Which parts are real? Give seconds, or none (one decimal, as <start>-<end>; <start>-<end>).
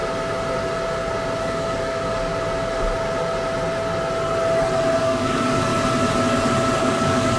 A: 0.0-1.4; 2.3-5.0; 5.7-6.8